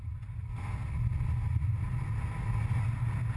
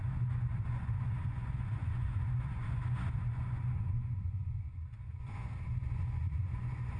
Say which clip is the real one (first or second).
first